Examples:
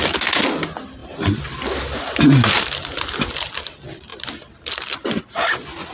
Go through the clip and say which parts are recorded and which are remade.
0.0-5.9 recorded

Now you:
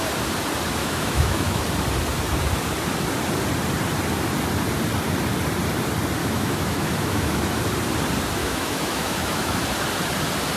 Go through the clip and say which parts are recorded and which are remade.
0.0-0.8 recorded; 0.8-1.6 remade; 1.6-6.2 recorded; 6.2-7.6 remade; 7.6-8.4 recorded; 8.4-9.6 remade; 9.6-10.6 recorded

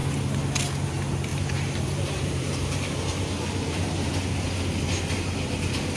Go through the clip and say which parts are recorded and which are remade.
0.0-1.3 recorded; 1.3-4.1 remade; 4.1-6.0 recorded

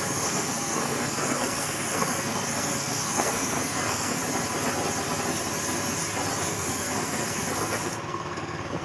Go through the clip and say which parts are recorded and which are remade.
0.0-4.2 remade; 4.2-6.5 recorded; 6.5-8.8 remade

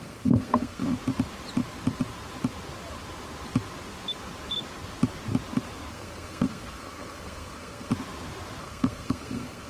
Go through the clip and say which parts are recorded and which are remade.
0.0-0.8 remade; 0.8-5.9 recorded; 5.9-7.9 remade; 7.9-8.6 recorded; 8.6-9.7 remade

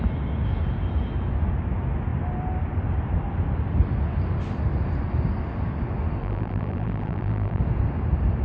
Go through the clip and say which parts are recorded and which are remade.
0.0-6.2 recorded; 6.2-7.6 remade; 7.6-8.4 recorded

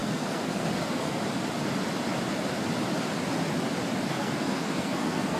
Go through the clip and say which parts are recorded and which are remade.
0.0-1.2 remade; 1.2-4.1 recorded; 4.1-5.4 remade